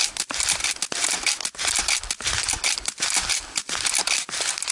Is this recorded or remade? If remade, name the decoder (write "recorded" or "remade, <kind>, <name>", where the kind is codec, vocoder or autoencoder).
recorded